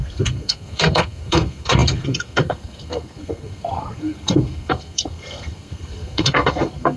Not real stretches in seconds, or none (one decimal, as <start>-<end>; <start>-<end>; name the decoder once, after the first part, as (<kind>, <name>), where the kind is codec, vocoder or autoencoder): 0.0-7.0 (codec, SNAC)

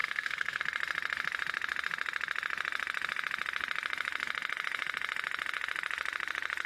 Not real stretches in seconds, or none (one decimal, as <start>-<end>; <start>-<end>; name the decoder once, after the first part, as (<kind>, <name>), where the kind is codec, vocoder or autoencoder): 0.0-0.6 (codec, SNAC)

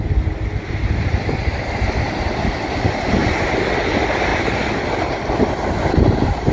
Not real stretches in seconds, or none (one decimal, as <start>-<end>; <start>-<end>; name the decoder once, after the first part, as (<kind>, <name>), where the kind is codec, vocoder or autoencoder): none

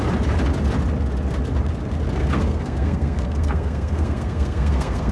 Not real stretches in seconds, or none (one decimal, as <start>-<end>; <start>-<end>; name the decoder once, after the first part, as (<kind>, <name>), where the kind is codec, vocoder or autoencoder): 2.2-5.1 (codec, SNAC)